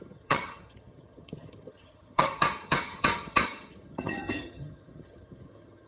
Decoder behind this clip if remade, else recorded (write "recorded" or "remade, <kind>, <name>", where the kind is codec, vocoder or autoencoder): remade, vocoder, HiFi-GAN